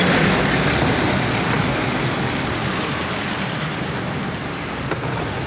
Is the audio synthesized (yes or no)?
no